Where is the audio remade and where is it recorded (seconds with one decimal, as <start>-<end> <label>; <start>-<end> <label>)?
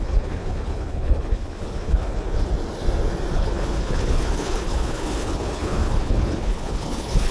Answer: 0.0-2.5 remade; 2.5-3.3 recorded; 3.3-7.3 remade